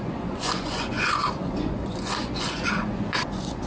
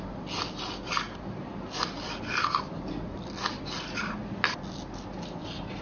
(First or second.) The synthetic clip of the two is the first